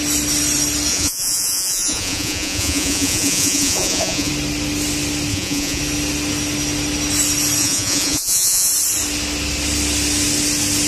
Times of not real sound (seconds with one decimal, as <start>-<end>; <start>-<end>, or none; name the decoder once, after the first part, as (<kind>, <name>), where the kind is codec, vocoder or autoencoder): 0.9-4.3 (vocoder, Vocos); 5.3-5.8; 7.6-8.7